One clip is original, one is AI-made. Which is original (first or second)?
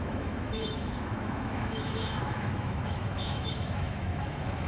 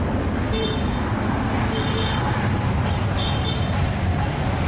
second